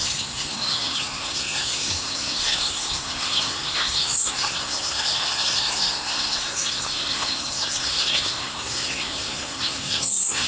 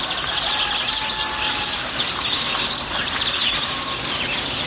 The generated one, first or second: first